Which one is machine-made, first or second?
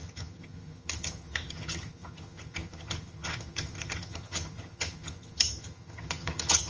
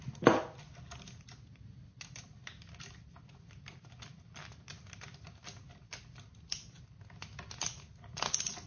first